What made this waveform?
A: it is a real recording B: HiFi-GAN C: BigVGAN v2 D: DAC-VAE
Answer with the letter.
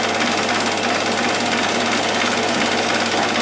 A